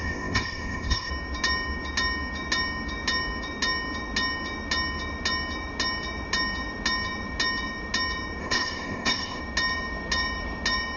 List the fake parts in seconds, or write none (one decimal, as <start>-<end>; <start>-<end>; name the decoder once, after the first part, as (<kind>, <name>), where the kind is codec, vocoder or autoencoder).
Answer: 0.0-1.1 (codec, ZipCodec); 8.4-9.4